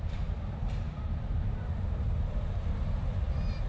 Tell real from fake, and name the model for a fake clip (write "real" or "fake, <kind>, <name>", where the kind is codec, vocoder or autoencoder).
fake, vocoder, BigVGAN v2